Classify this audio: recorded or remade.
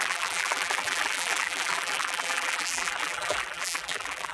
remade